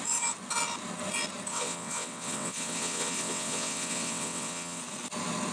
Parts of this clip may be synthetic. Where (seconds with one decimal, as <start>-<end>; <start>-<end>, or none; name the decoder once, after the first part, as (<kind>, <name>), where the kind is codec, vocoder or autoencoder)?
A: 1.5-4.8 (vocoder, WaveNeXt)